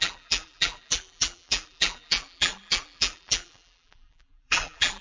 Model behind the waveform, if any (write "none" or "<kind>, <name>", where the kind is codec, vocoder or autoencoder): vocoder, BigVGAN v2